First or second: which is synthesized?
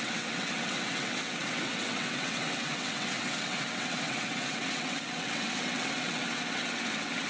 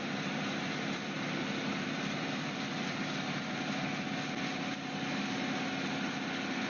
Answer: first